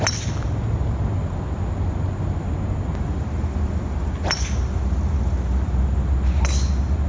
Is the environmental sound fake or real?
real